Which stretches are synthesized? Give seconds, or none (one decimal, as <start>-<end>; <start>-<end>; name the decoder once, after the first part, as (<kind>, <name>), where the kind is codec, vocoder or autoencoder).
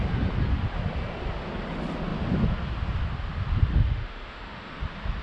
3.7-4.8 (autoencoder, DAC-VAE)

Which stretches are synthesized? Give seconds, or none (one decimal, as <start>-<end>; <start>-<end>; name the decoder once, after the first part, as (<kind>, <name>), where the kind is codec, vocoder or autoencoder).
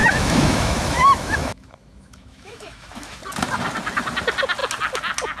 0.0-3.2 (autoencoder, DAC-VAE)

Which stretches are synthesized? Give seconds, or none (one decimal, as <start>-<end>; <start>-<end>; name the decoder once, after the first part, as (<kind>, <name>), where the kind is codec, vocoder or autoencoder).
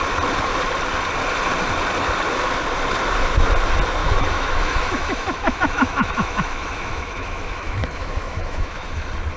4.0-8.9 (autoencoder, DAC-VAE)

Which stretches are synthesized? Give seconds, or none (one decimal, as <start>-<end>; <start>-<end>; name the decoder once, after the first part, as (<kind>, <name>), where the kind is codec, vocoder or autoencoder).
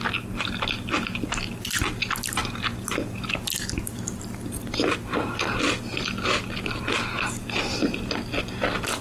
none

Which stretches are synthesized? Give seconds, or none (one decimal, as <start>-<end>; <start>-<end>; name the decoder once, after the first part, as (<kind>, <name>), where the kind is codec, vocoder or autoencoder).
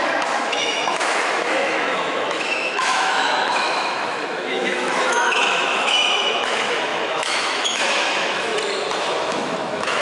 0.0-8.5 (autoencoder, DAC-VAE); 9.2-10.0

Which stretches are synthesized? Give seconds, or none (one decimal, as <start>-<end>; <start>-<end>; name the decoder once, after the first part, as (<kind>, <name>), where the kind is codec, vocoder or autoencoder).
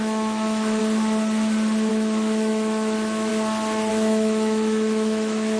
0.0-0.8 (autoencoder, DAC-VAE); 1.9-3.3; 3.9-5.6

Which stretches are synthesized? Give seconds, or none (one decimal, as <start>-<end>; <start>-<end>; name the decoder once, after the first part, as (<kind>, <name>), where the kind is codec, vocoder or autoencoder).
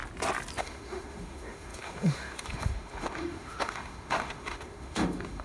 0.6-5.4 (autoencoder, DAC-VAE)